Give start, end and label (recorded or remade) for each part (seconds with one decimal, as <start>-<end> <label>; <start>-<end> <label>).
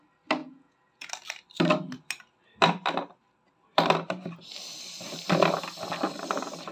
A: 0.0-0.4 recorded; 0.4-1.1 remade; 1.1-6.7 recorded